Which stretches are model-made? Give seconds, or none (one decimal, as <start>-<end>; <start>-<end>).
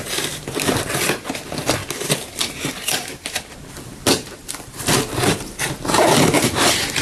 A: 0.0-7.0